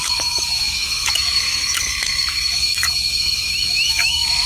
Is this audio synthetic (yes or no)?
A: yes